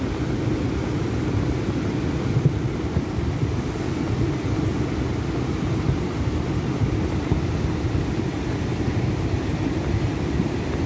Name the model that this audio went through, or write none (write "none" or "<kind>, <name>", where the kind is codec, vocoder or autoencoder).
none